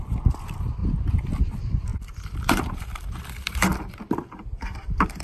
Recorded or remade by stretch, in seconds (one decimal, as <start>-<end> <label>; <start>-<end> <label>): 0.0-0.8 remade; 0.8-1.4 recorded; 1.4-5.2 remade